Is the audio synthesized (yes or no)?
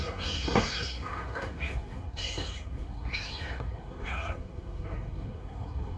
yes